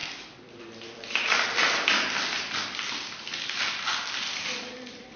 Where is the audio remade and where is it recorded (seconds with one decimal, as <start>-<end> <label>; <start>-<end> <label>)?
0.0-0.6 recorded; 0.6-5.2 remade